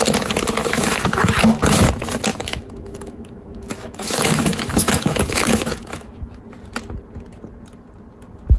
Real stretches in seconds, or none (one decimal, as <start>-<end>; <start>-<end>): 0.0-0.6; 1.9-2.3; 6.4-8.6